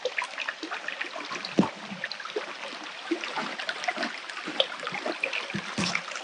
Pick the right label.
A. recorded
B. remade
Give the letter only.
A